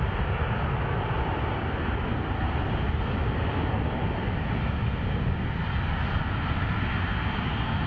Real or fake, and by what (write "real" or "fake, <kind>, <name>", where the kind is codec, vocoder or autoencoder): real